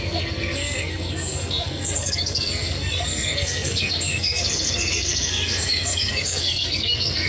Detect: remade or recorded remade